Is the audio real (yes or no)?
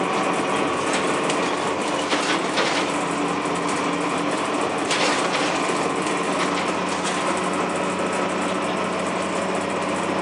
yes